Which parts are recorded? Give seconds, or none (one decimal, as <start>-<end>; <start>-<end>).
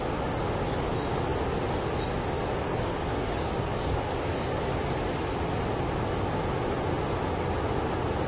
0.0-2.7; 4.6-8.3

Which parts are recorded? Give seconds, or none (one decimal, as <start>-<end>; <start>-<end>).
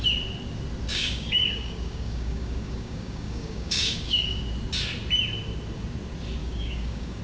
0.0-0.9; 4.4-6.4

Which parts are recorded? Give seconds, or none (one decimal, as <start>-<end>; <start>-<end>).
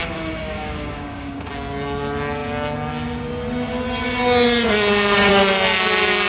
1.5-6.3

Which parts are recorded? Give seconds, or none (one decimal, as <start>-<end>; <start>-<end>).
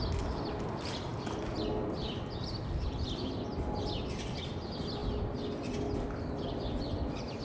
0.0-7.4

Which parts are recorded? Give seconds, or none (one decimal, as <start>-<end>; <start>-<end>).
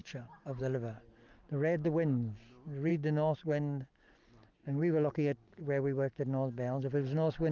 0.6-2.9; 4.1-4.6; 5.6-7.5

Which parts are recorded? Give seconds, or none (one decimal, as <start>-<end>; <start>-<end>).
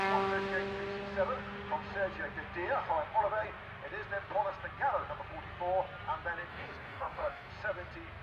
0.0-6.5; 7.5-8.2